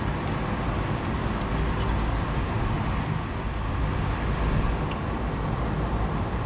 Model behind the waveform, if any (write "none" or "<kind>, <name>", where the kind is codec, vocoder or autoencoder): none